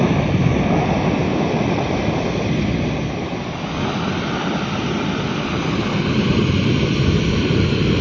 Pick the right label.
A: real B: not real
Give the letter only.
A